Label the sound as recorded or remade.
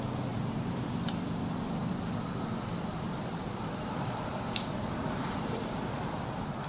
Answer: remade